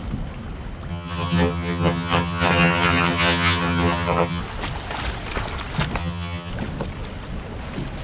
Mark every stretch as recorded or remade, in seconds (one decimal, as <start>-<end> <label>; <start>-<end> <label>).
0.0-0.9 recorded; 0.9-4.4 remade; 4.4-6.0 recorded; 6.0-6.5 remade; 6.5-8.0 recorded